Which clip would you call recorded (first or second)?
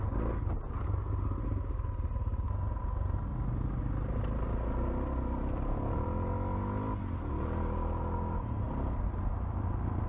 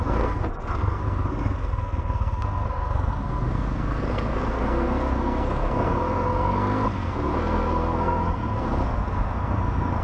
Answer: first